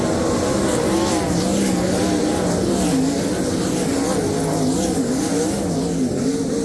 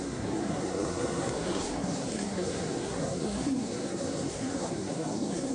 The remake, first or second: second